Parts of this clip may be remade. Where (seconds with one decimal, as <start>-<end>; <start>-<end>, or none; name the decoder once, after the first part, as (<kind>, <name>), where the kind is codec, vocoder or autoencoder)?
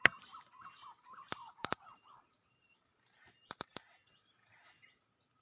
1.4-3.6 (vocoder, BigVGAN v2)